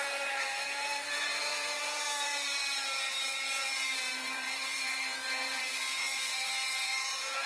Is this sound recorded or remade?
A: remade